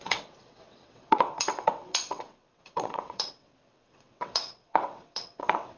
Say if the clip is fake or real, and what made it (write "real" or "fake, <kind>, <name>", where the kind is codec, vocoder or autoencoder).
fake, vocoder, WaveNeXt